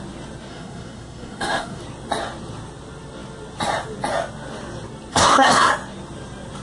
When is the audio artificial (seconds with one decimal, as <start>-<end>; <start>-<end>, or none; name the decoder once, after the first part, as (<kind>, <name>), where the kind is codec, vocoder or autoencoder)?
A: 0.5-1.8 (codec, SNAC); 5.1-5.7